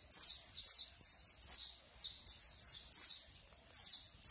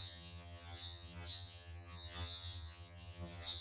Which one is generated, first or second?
second